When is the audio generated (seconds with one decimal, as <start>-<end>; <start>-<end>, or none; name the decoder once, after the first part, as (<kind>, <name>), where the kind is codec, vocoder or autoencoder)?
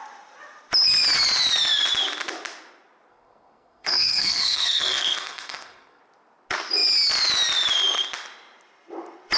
3.1-6.0 (codec, SNAC)